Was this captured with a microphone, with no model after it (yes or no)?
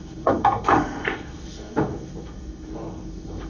no